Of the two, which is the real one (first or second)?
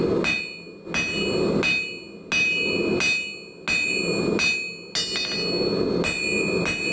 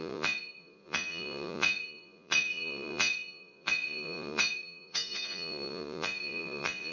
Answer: first